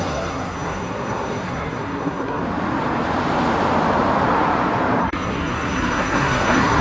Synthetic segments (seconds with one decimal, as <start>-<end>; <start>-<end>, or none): 0.0-2.4; 5.0-6.8